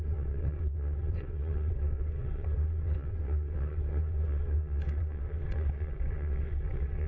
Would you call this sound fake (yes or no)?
yes